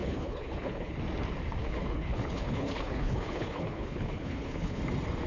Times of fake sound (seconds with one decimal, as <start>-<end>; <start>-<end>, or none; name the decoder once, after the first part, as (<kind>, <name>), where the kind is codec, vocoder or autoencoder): 0.0-0.9 (codec, HILCodec); 1.6-4.8